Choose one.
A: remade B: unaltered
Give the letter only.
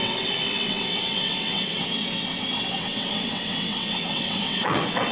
A